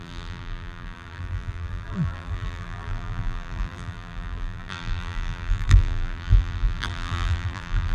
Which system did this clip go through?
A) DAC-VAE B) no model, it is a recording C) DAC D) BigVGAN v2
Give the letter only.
D